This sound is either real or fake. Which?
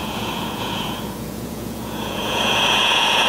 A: fake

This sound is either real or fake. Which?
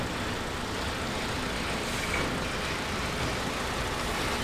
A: real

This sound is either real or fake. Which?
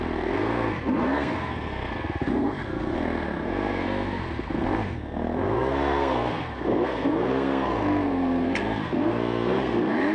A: fake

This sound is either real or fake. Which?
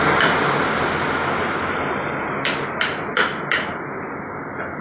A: real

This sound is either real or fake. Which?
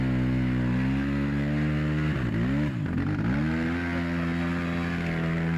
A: real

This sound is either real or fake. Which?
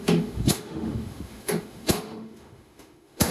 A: fake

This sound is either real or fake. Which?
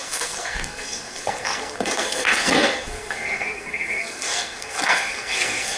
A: fake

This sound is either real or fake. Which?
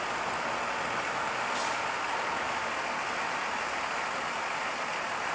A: real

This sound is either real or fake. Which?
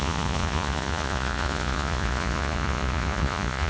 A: fake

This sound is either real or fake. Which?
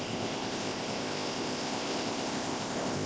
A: fake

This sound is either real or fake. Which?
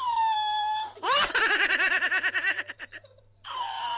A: fake